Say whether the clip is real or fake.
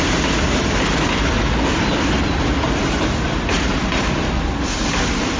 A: real